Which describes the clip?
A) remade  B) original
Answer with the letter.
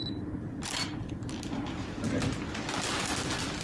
B